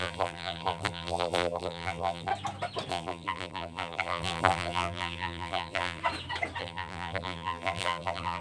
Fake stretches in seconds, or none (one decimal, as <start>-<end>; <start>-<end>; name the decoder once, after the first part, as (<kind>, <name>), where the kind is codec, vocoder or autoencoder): 0.0-2.3 (vocoder, BigVGAN v2); 2.9-6.0; 6.6-8.4